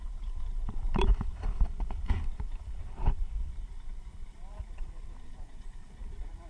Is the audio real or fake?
fake